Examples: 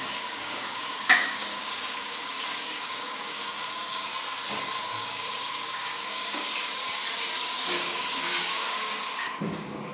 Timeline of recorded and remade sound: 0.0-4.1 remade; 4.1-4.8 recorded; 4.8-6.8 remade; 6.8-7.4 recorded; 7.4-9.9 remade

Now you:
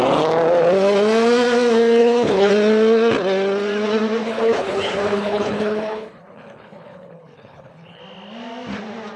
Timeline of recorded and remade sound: 0.0-2.0 recorded; 2.0-2.5 remade; 2.5-4.2 recorded; 4.2-8.0 remade; 8.0-9.2 recorded

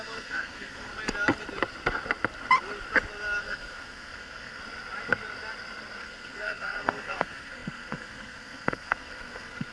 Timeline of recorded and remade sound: 0.0-0.9 remade; 0.9-3.4 recorded; 3.4-4.6 remade; 4.6-6.0 recorded; 6.0-9.7 remade

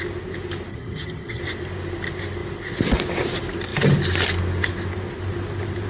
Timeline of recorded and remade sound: 0.0-0.7 recorded; 0.7-1.4 remade; 1.4-5.9 recorded